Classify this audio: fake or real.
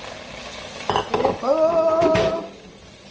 real